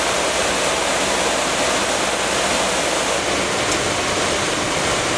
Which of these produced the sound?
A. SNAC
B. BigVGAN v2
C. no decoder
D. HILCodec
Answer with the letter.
C